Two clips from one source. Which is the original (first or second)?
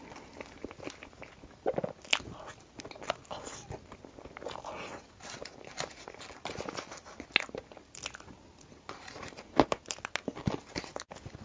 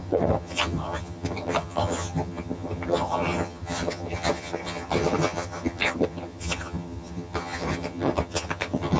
first